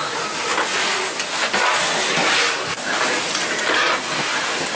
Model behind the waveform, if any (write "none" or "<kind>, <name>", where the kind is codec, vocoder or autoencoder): none